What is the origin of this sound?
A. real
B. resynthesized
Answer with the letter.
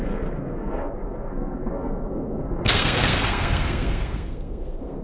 B